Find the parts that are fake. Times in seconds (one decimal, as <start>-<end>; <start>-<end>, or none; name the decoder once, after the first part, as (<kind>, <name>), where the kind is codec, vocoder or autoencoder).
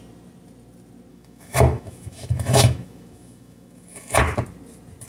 1.1-4.2 (autoencoder, DAC-VAE)